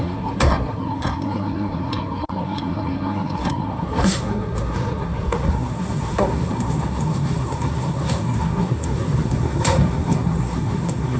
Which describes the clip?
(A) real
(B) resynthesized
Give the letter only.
B